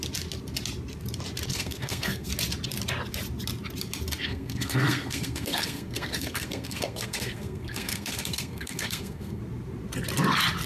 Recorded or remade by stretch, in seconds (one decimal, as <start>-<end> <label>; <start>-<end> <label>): 0.0-1.5 recorded; 1.5-2.3 remade; 2.3-4.2 recorded; 4.2-9.4 remade; 9.4-10.7 recorded